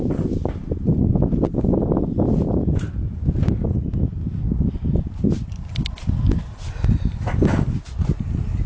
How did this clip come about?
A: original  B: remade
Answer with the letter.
A